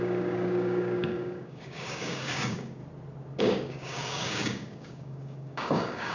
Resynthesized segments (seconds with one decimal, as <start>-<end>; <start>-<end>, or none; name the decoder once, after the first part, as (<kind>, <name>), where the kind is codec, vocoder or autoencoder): 0.0-2.8 (codec, DAC); 3.4-6.1